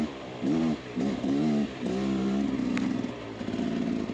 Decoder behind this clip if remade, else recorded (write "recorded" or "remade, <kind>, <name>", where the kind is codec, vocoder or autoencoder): recorded